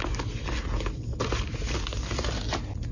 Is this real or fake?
real